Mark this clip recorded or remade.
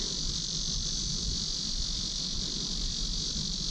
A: recorded